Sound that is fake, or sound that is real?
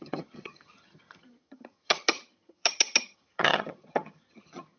fake